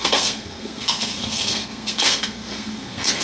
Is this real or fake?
fake